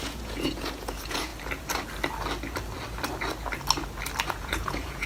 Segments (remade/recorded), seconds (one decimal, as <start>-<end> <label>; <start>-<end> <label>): 0.0-1.3 remade; 1.3-4.3 recorded; 4.3-5.1 remade